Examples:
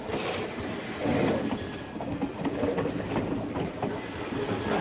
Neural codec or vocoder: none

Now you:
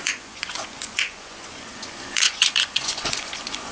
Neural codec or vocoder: vocoder, Vocos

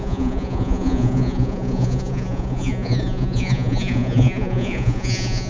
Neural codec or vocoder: vocoder, Vocos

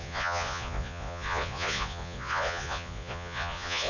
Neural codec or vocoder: vocoder, Vocos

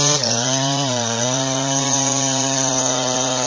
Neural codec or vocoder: vocoder, Vocos